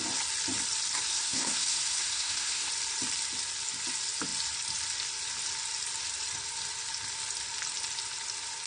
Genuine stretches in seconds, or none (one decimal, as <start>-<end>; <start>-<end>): 0.0-1.1; 2.7-8.7